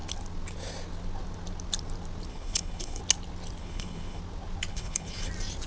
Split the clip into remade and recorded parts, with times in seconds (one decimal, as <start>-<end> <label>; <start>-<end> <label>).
0.0-2.3 recorded; 2.3-3.0 remade; 3.0-3.6 recorded; 3.6-4.2 remade; 4.2-4.7 recorded; 4.7-5.3 remade; 5.3-5.7 recorded